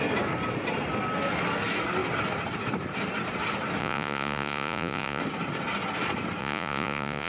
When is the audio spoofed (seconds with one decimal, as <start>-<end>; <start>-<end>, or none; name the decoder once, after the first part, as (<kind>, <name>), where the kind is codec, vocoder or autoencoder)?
3.8-5.2 (vocoder, Vocos); 6.4-7.3